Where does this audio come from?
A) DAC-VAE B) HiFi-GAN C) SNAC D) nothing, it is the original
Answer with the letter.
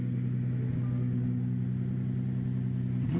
D